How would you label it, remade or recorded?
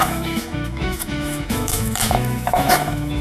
remade